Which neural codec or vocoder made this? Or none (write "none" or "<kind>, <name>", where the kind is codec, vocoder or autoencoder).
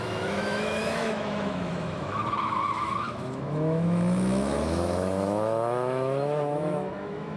autoencoder, DAC-VAE